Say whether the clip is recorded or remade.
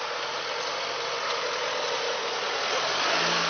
recorded